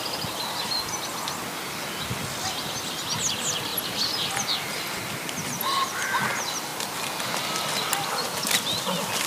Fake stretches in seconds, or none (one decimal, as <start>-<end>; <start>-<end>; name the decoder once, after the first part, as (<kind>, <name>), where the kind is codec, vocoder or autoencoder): 3.7-4.7 (vocoder, BigVGAN v2)